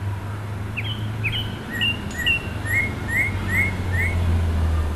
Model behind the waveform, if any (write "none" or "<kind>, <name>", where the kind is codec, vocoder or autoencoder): none